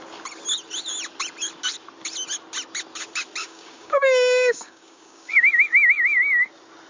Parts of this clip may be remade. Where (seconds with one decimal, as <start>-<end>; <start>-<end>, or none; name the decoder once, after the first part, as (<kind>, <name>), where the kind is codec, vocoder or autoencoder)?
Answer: 3.4-5.5 (codec, DAC)